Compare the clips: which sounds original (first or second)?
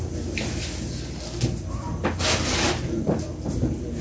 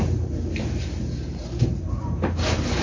first